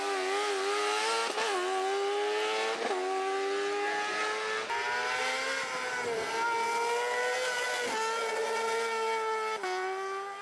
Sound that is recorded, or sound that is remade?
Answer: recorded